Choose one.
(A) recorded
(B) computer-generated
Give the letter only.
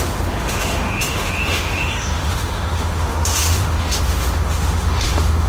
B